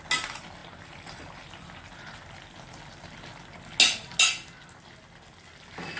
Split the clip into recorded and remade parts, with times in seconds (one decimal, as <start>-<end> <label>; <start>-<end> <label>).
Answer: 0.0-6.0 recorded